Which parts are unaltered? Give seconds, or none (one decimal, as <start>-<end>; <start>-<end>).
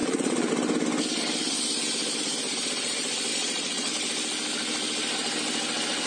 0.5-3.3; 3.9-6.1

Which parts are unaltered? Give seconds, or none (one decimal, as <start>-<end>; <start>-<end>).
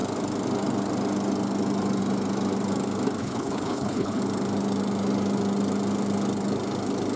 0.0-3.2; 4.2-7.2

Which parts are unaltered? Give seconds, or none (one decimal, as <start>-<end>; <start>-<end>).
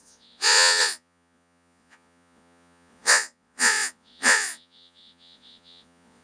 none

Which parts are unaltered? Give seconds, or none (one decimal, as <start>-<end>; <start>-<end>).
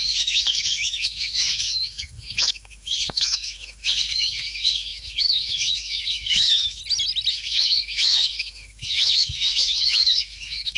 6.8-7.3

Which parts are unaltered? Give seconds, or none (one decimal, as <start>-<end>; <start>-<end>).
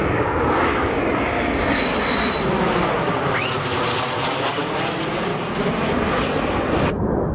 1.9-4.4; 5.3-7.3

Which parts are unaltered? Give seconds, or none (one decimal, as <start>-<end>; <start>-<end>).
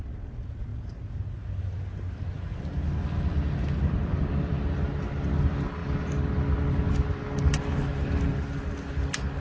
0.0-9.4